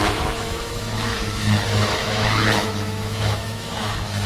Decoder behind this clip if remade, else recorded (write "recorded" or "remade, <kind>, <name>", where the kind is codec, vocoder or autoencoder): remade, autoencoder, DAC-VAE